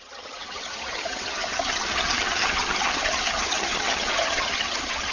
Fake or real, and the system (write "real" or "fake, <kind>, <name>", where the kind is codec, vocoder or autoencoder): fake, vocoder, HiFi-GAN